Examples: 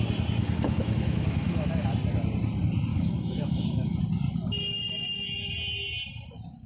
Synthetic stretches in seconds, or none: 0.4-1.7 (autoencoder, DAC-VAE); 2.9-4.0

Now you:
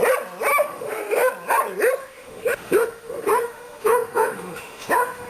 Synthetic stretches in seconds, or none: 0.5-1.3 (autoencoder, DAC-VAE); 2.0-5.3

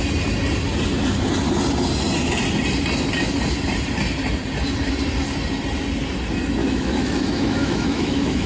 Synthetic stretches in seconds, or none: 6.6-8.5 (autoencoder, DAC-VAE)

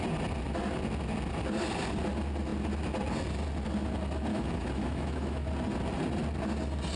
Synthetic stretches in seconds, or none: 4.3-5.5 (autoencoder, DAC-VAE)

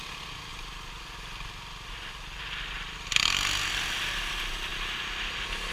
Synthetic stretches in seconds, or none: none

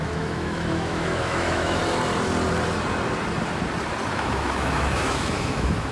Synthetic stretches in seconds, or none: 0.0-1.8 (autoencoder, DAC-VAE); 4.1-5.9